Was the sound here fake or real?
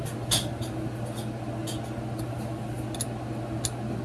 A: real